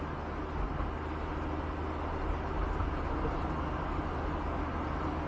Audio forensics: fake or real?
real